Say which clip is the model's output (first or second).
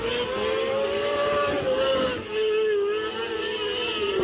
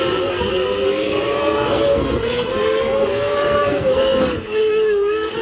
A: second